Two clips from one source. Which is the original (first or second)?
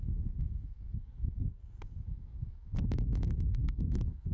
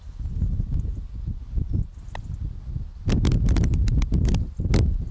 second